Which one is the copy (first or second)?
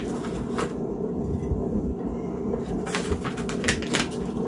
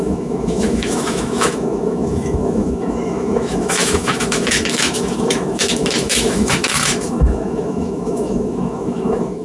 second